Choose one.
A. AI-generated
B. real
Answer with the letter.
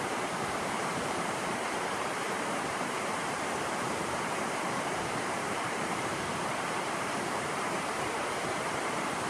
A